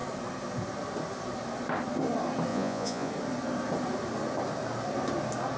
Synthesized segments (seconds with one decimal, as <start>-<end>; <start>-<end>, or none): 2.5-3.1